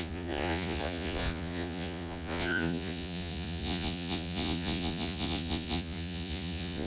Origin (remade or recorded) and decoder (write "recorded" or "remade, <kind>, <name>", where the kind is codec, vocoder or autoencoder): remade, vocoder, Vocos